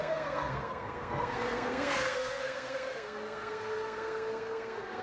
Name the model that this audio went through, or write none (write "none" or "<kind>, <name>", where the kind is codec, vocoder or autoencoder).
codec, SNAC